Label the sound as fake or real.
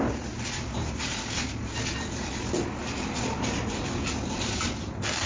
real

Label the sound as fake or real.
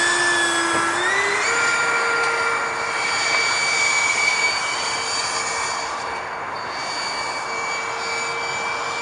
real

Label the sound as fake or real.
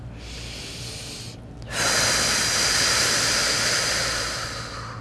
real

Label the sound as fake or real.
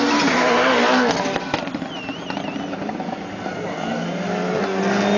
real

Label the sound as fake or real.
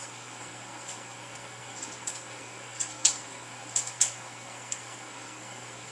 fake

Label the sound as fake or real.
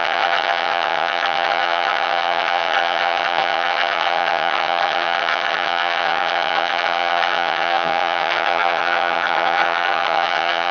fake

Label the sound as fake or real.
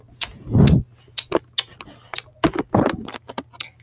real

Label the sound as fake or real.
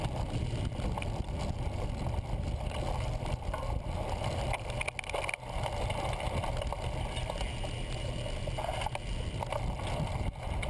real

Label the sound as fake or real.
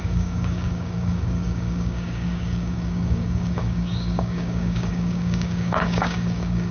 fake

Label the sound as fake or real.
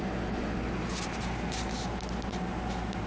real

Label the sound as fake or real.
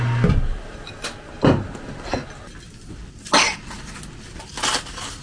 real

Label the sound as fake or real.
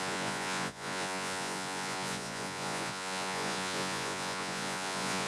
fake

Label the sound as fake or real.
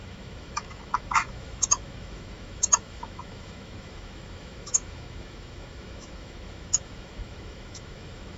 fake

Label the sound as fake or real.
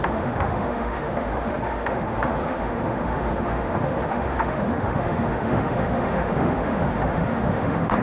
fake